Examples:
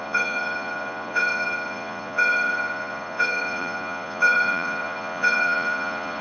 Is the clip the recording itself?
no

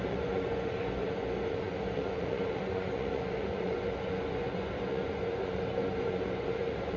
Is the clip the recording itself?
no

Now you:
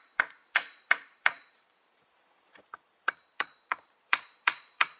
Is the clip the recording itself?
no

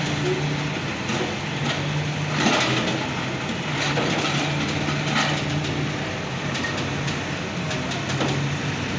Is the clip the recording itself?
yes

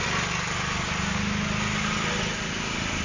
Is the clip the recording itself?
yes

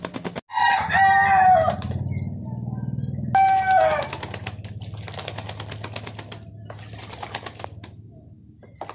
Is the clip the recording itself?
yes